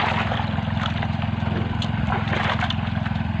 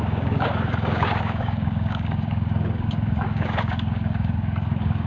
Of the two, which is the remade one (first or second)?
second